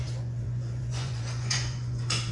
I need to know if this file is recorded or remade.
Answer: remade